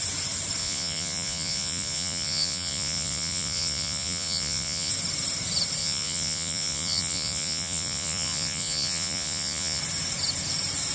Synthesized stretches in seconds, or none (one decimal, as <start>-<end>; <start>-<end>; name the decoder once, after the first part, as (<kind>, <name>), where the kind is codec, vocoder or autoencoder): 0.6-4.9 (vocoder, Vocos); 5.8-9.8